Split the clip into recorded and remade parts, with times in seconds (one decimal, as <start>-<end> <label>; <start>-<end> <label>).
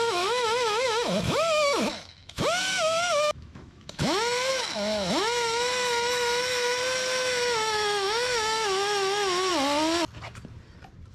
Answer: 0.0-9.5 remade; 9.5-11.1 recorded